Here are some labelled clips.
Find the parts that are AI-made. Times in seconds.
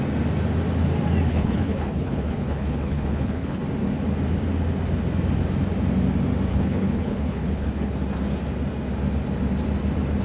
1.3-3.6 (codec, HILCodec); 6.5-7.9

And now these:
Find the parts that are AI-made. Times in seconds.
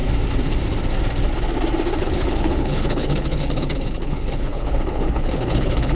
2.0-6.0 (codec, HILCodec)